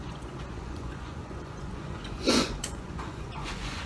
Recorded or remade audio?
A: remade